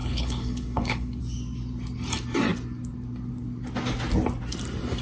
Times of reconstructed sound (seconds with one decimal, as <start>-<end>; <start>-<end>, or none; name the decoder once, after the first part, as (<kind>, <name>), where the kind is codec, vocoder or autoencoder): 0.0-1.2 (codec, HILCodec)

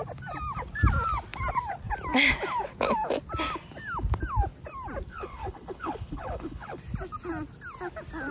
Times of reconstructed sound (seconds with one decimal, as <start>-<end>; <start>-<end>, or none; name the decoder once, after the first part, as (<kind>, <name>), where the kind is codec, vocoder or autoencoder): 5.1-6.8 (codec, HILCodec)

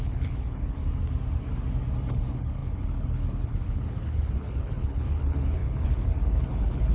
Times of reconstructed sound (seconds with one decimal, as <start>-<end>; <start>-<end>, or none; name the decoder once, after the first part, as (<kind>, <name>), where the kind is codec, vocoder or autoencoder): 0.0-0.8 (codec, HILCodec); 2.1-6.9

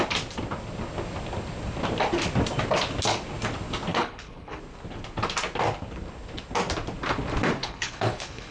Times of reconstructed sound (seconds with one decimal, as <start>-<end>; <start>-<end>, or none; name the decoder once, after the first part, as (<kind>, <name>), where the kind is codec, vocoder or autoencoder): 3.9-4.6 (codec, HILCodec); 7.6-8.5

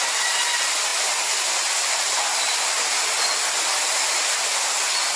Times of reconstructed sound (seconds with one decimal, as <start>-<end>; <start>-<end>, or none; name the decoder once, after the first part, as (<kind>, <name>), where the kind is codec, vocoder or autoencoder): none

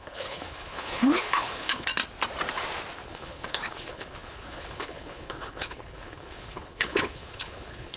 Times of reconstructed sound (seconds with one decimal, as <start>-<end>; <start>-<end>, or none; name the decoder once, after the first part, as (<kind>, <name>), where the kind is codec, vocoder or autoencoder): 0.0-1.9 (codec, HILCodec); 3.1-8.0

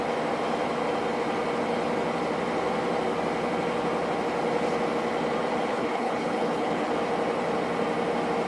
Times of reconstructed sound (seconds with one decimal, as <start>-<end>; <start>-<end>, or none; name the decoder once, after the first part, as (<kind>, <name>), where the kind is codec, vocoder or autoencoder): 5.7-6.9 (codec, HILCodec)